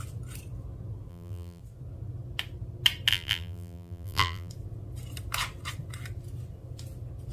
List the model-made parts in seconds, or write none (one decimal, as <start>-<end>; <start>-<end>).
1.1-1.6; 3.1-4.5